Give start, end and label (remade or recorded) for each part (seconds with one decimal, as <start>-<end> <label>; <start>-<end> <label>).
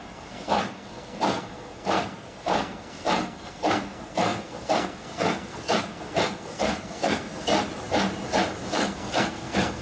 0.0-7.5 remade; 7.5-8.7 recorded; 8.7-9.8 remade